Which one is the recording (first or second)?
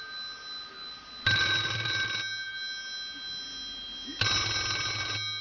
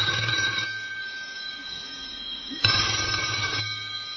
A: first